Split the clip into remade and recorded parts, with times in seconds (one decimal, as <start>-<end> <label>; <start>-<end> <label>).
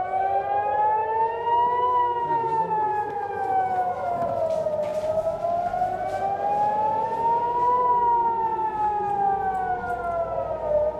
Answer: 0.0-1.0 recorded; 1.0-4.4 remade; 4.4-11.0 recorded